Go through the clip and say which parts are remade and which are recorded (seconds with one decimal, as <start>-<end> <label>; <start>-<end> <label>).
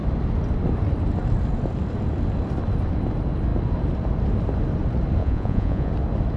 0.0-5.2 recorded; 5.2-5.9 remade; 5.9-6.4 recorded